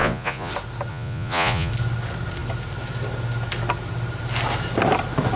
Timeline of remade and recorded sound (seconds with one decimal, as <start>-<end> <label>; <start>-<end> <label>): 0.0-0.5 remade; 0.5-0.9 recorded; 0.9-1.7 remade; 1.7-5.4 recorded

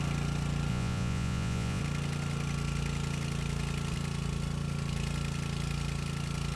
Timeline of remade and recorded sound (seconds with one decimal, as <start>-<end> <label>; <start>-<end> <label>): 0.0-0.7 recorded; 0.7-1.8 remade; 1.8-6.6 recorded